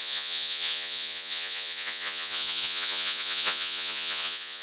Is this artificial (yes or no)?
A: yes